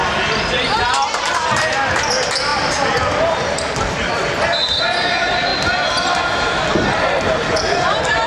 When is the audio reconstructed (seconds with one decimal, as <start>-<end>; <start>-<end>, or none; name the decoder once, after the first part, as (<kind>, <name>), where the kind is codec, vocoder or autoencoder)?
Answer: 0.7-5.5 (vocoder, BigVGAN v2); 6.0-8.3